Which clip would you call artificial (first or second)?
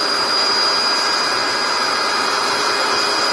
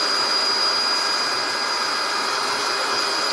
second